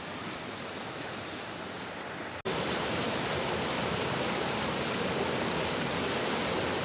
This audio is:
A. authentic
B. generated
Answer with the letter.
A